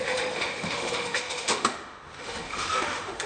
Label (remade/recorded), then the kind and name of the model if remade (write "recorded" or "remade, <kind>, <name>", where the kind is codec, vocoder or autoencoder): remade, autoencoder, DAC-VAE